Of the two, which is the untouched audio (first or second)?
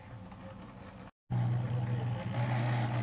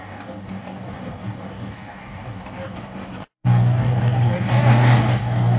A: first